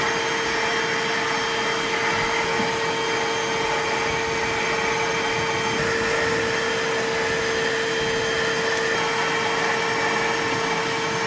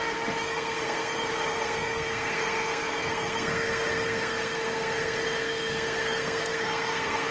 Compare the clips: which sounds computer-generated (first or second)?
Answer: second